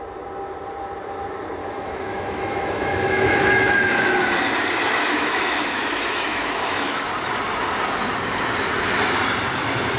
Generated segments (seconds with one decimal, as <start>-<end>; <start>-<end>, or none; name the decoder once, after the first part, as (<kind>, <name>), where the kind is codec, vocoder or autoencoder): 1.6-4.2 (autoencoder, DAC-VAE); 5.0-7.1